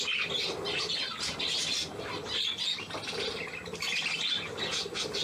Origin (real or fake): real